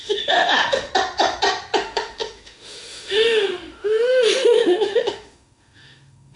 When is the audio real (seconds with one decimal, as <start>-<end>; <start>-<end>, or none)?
0.9-1.8